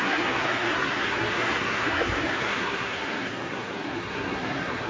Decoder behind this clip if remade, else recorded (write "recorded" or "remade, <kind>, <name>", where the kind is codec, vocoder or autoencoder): remade, codec, SNAC